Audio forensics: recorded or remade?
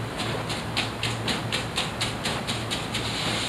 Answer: recorded